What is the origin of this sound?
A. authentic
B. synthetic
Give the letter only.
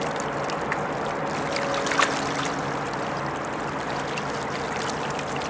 A